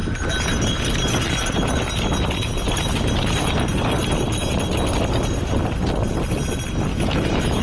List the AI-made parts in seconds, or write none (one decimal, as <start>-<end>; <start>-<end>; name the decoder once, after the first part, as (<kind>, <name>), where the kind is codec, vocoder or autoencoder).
6.9-7.6 (autoencoder, DAC-VAE)